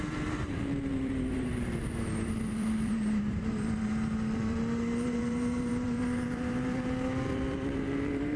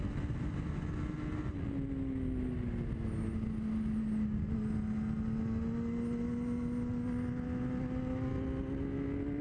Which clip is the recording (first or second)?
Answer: second